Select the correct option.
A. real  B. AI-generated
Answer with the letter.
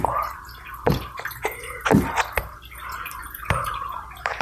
B